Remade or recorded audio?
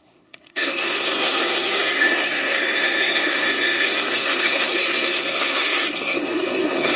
remade